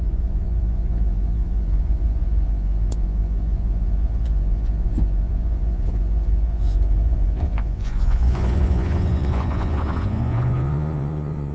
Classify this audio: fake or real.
fake